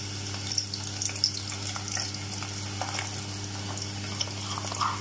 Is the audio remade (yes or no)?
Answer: no